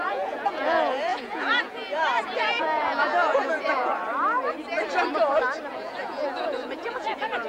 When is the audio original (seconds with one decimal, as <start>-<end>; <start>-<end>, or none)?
3.9-5.7